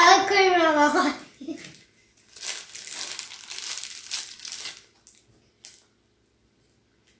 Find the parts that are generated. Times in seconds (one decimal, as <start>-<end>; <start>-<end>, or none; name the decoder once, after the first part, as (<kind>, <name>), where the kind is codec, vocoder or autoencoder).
none